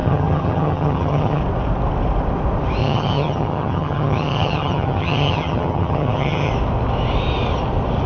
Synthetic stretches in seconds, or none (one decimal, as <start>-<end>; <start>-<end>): 0.0-1.4; 2.8-6.5

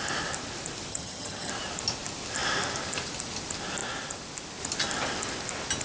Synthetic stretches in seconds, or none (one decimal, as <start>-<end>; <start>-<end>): 0.9-1.5

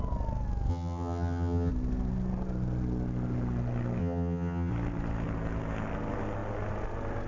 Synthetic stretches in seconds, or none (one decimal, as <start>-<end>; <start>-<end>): 0.7-1.7; 4.0-4.7

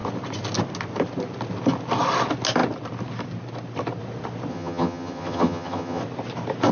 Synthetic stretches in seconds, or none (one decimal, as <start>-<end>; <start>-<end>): 4.5-6.0